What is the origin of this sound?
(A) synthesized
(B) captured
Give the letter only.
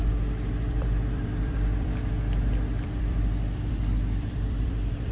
A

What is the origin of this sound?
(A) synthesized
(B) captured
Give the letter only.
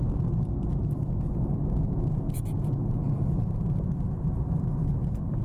B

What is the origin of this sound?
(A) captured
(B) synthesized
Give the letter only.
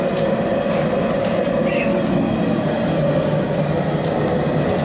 A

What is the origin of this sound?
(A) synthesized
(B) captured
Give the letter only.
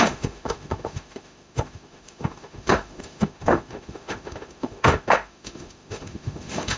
A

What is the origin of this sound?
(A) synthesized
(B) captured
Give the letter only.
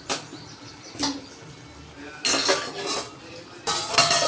B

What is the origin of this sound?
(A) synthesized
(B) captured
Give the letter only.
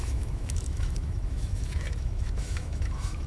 A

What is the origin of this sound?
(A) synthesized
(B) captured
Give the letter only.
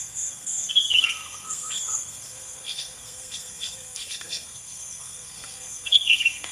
A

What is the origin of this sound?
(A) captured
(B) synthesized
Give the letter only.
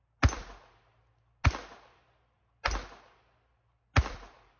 A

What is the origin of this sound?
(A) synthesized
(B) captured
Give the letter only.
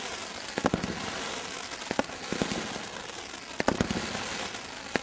B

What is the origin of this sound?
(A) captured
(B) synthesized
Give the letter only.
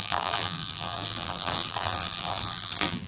B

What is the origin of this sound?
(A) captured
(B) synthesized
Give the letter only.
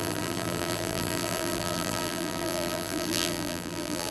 B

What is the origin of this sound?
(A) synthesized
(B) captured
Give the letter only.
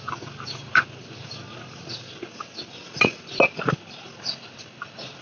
B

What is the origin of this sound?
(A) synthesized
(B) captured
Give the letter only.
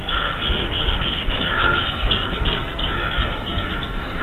A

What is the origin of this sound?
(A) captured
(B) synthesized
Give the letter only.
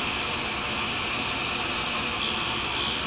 A